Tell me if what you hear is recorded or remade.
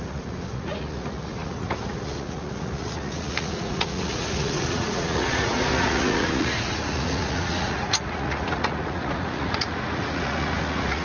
remade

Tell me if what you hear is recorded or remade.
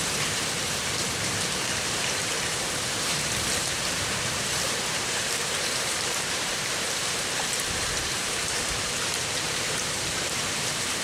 remade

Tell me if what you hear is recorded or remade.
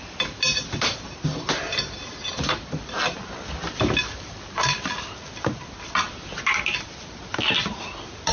recorded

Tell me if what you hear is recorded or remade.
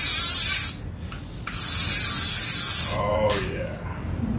recorded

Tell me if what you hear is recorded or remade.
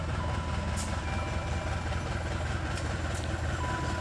recorded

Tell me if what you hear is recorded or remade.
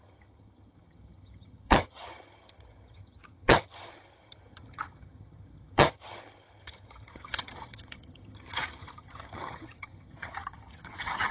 remade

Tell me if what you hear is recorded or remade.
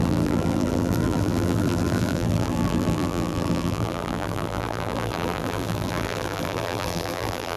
remade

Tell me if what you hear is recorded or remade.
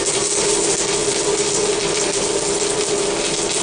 recorded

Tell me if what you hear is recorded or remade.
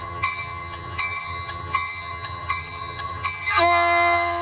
remade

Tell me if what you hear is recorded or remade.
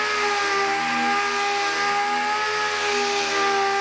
recorded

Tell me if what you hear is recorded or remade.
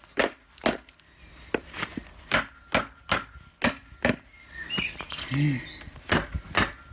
recorded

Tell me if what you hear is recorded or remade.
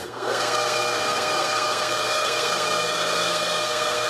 remade